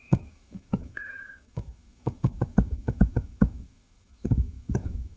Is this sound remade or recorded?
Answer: remade